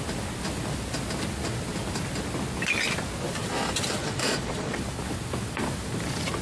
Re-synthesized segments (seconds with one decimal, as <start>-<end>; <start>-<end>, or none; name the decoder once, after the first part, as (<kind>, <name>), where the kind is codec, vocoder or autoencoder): 4.0-4.8 (vocoder, Vocos)